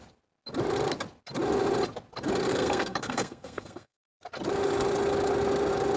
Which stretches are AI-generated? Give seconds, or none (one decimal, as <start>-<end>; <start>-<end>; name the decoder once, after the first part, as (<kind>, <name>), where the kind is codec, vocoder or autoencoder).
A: 2.5-4.2 (codec, SNAC)